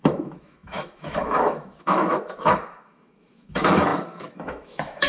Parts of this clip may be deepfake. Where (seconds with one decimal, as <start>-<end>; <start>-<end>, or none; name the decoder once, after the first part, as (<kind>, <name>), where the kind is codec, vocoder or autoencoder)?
0.0-5.1 (autoencoder, DAC-VAE)